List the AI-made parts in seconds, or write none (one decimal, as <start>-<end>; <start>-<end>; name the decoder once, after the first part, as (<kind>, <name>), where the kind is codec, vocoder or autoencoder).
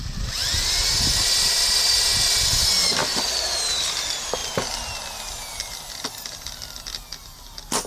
0.0-4.4 (vocoder, BigVGAN v2); 5.9-7.9